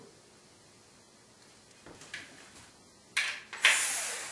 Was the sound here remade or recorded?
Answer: recorded